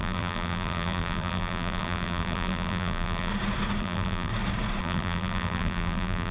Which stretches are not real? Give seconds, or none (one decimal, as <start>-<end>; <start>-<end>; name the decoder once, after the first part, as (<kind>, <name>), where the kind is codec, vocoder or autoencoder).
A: 0.0-3.3 (vocoder, BigVGAN v2); 3.8-4.3; 4.8-6.3